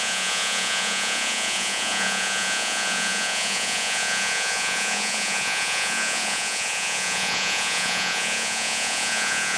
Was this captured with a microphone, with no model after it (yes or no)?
no